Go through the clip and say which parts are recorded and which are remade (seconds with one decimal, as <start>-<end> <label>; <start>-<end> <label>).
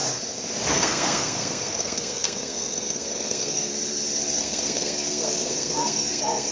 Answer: 0.0-0.7 recorded; 0.7-3.7 remade; 3.7-4.4 recorded; 4.4-6.5 remade